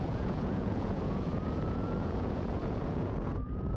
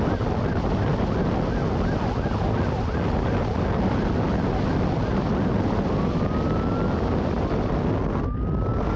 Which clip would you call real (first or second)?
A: second